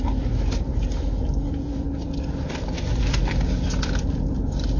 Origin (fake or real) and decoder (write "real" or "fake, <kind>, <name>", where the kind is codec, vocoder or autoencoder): fake, vocoder, BigVGAN v2